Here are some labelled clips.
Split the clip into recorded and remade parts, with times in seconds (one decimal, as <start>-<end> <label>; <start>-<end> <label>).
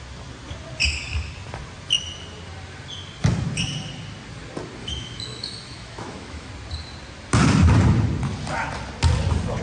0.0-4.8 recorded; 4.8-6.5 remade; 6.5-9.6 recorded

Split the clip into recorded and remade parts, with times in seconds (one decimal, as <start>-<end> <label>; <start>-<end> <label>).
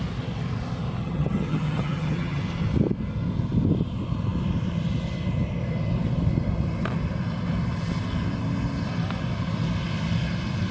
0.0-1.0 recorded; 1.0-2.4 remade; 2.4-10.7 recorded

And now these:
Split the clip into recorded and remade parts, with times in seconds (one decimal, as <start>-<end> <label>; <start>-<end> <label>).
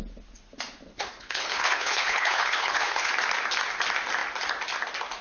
0.0-0.9 recorded; 0.9-3.1 remade; 3.1-5.2 recorded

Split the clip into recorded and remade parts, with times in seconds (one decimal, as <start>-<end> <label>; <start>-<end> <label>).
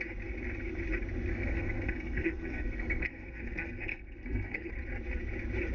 0.0-1.3 recorded; 1.3-4.7 remade; 4.7-5.7 recorded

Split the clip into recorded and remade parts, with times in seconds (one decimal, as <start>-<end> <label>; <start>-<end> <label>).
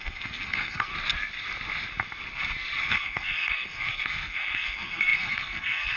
0.0-0.9 remade; 0.9-2.8 recorded; 2.8-6.0 remade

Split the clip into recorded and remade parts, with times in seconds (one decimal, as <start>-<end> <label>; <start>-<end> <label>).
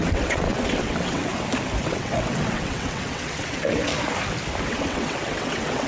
0.0-1.3 remade; 1.3-1.8 recorded; 1.8-3.9 remade; 3.9-4.6 recorded; 4.6-5.9 remade